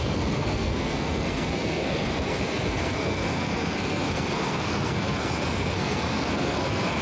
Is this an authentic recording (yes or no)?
no